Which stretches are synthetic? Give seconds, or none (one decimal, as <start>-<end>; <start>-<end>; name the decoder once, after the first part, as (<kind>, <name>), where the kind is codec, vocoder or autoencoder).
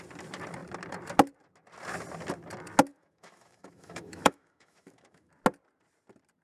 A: 2.9-5.3 (autoencoder, DAC-VAE)